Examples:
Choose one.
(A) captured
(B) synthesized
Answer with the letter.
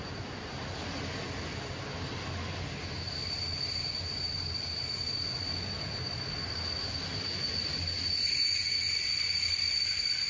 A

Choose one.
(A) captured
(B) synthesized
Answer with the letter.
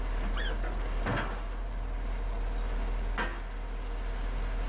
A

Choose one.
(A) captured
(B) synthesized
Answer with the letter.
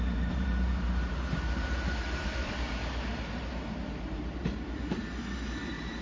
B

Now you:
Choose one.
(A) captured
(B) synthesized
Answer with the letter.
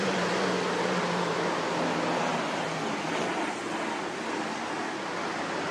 B